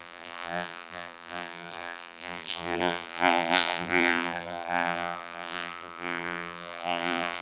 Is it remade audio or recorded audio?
remade